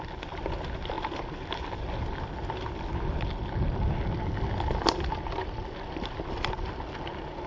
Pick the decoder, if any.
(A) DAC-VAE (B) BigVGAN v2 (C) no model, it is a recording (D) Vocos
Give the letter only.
C